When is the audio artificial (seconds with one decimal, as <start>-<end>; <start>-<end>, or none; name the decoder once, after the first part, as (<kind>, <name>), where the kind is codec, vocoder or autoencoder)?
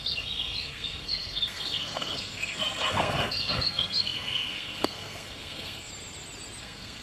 0.0-5.9 (codec, SNAC); 6.6-7.0